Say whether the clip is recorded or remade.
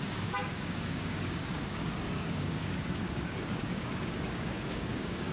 remade